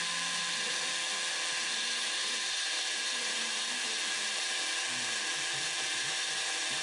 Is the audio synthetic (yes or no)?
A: no